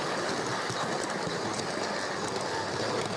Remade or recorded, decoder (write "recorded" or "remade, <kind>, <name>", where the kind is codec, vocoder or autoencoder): recorded